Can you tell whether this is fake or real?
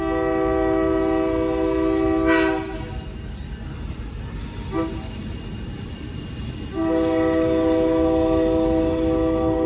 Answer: real